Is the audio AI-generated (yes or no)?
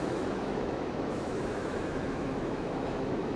yes